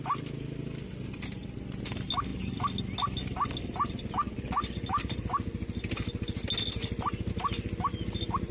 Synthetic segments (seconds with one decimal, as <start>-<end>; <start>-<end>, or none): none